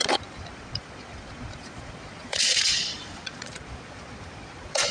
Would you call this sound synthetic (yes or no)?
yes